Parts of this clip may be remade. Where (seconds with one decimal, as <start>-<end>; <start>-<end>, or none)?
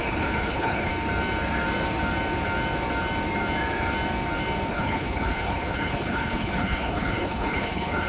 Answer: 0.0-0.9; 4.7-8.1